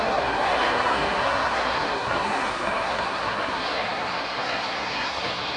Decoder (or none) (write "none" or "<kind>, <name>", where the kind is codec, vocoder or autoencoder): codec, SNAC